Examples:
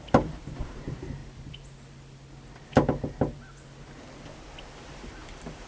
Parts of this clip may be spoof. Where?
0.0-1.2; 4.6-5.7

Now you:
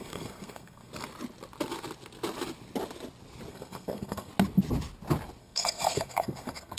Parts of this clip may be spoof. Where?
0.0-0.9; 3.5-4.3; 5.4-6.8

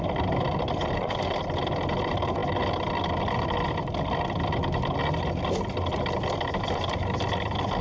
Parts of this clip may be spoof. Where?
none

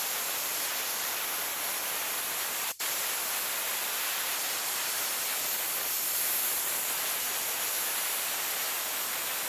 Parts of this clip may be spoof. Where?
0.0-4.8; 6.8-9.5

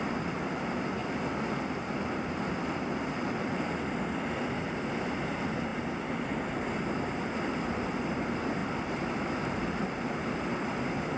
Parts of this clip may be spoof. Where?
none

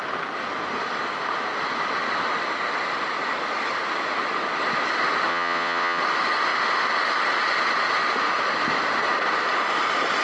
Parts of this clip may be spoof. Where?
5.3-6.0

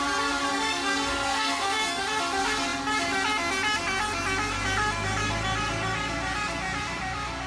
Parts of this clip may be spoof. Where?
0.5-2.0